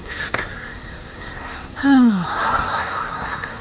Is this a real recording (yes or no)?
no